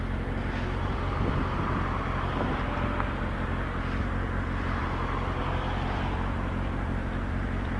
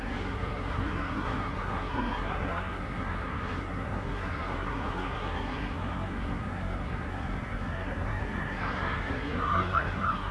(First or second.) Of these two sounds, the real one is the first